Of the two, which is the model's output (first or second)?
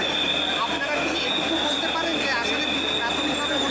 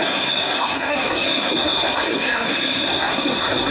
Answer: second